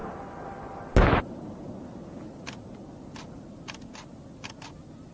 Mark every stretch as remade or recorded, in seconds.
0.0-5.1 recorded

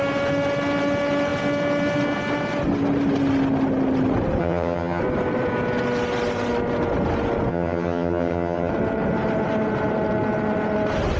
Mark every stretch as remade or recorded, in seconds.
0.0-4.4 recorded; 4.4-5.0 remade; 5.0-7.5 recorded; 7.5-8.7 remade; 8.7-11.2 recorded

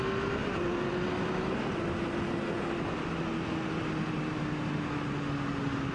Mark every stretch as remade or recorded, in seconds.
0.0-0.4 recorded; 0.4-0.9 remade; 0.9-5.9 recorded

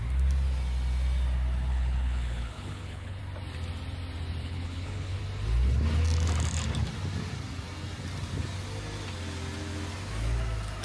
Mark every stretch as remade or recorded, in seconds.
0.0-1.7 recorded; 1.7-3.2 remade; 3.2-4.4 recorded; 4.4-5.2 remade; 5.2-10.8 recorded